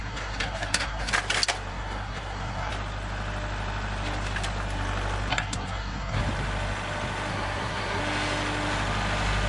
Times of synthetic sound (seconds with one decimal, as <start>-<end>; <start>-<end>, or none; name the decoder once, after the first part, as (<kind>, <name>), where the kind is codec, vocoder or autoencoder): 0.0-1.1 (codec, SNAC); 1.7-2.7; 5.3-6.2; 7.3-8.0